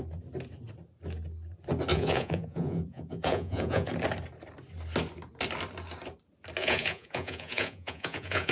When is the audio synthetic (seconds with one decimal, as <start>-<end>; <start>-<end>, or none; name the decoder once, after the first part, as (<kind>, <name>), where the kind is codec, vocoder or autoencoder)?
1.9-3.9 (vocoder, Vocos); 6.6-8.5